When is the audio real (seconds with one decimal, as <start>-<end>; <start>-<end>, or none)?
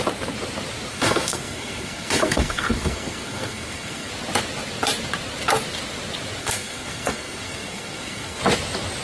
0.0-0.9; 4.1-6.4; 8.4-9.0